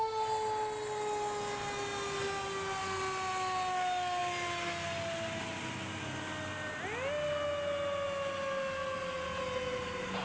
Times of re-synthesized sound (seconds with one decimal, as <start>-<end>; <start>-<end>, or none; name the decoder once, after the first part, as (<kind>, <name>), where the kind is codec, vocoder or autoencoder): none